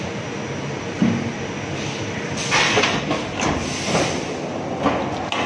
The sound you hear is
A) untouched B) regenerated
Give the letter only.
A